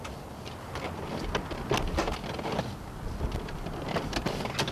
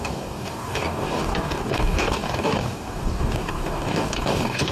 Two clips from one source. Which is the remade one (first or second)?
second